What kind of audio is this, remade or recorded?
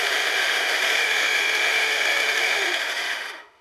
remade